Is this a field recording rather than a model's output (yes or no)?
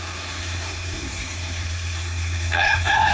no